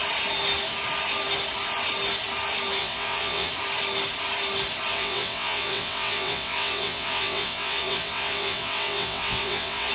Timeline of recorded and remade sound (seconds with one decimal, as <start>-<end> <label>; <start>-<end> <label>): 0.0-2.8 recorded; 2.8-3.5 remade; 3.5-4.9 recorded; 4.9-9.9 remade